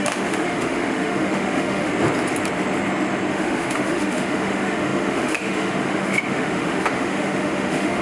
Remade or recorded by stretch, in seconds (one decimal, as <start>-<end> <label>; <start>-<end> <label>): 0.0-1.9 remade; 1.9-3.3 recorded; 3.3-8.0 remade